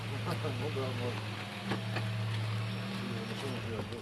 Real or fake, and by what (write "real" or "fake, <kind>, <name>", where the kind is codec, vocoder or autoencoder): real